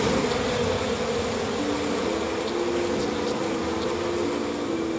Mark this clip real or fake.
real